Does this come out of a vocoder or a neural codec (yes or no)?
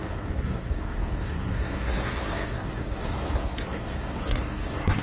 yes